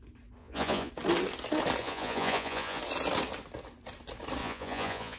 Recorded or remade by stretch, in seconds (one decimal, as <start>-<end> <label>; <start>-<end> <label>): 0.0-0.4 recorded; 0.4-0.9 remade; 0.9-1.8 recorded; 1.8-2.8 remade; 2.8-4.4 recorded; 4.4-5.2 remade